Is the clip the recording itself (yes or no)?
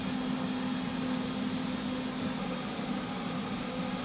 yes